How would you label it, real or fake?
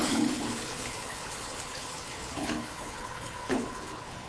fake